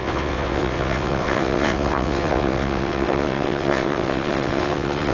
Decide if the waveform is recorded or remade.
remade